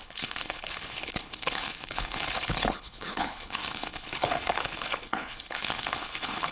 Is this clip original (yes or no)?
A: no